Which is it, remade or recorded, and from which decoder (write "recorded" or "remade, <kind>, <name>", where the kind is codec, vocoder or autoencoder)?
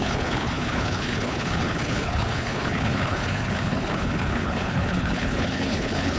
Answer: remade, codec, HILCodec